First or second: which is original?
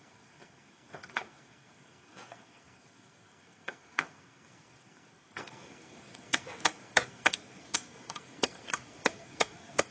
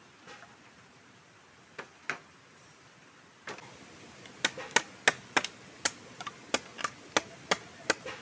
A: second